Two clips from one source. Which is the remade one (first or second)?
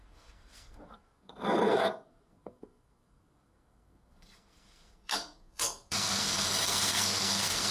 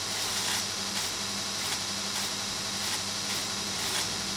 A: first